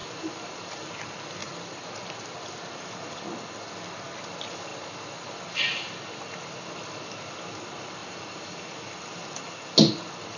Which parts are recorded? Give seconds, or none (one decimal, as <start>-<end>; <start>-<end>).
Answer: 0.9-1.4; 2.3-8.0; 8.6-10.4